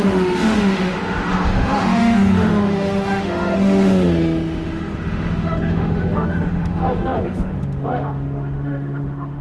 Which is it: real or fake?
fake